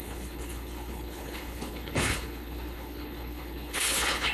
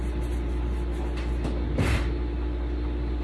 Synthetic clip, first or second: first